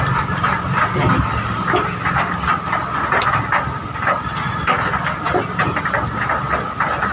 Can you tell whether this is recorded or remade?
recorded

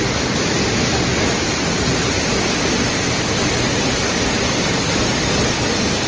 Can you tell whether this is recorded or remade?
recorded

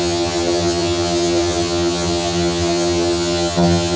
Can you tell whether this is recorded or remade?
remade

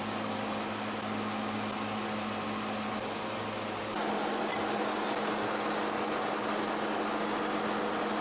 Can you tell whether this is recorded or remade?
recorded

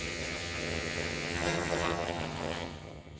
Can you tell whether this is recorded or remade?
remade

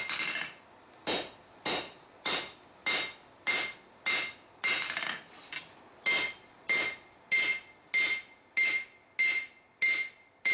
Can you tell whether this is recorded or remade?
recorded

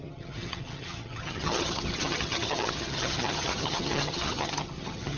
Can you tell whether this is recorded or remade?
remade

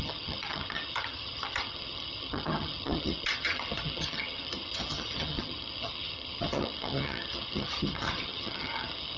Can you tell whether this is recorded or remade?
remade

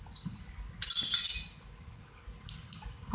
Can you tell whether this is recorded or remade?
recorded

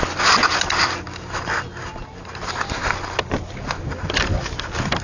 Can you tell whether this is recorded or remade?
recorded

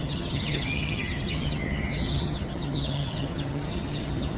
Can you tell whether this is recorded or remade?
remade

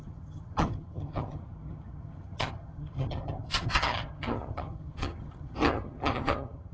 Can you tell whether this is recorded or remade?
remade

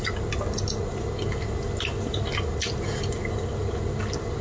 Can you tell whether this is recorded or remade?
recorded